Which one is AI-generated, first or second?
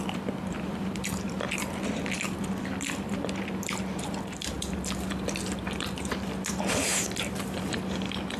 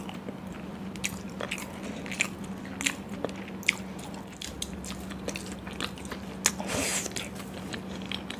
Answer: first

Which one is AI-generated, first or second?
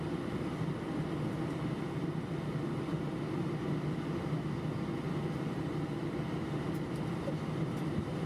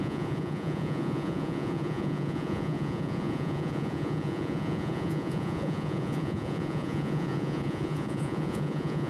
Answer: second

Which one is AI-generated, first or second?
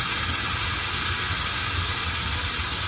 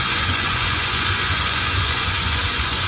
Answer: second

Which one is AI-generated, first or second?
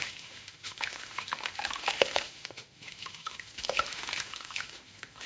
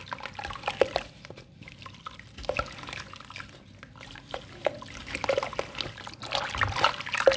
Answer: first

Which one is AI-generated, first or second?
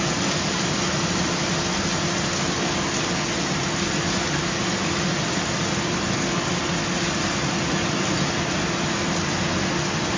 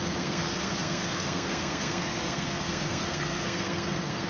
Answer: second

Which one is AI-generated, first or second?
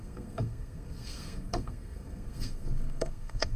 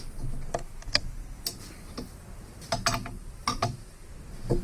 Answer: first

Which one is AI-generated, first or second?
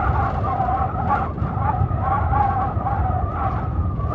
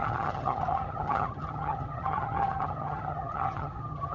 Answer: second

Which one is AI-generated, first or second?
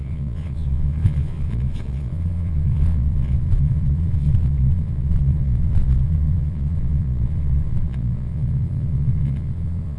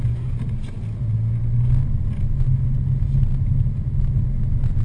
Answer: first